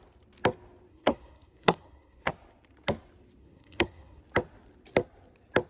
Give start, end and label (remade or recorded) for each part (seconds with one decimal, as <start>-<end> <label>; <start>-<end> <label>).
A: 0.0-0.9 recorded; 0.9-2.3 remade; 2.3-3.4 recorded; 3.4-4.2 remade; 4.2-5.7 recorded